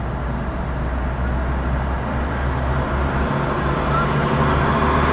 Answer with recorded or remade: recorded